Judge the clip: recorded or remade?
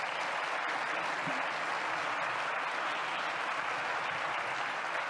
recorded